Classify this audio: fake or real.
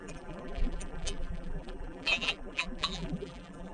fake